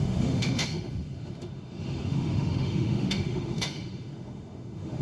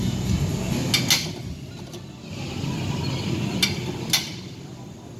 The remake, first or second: first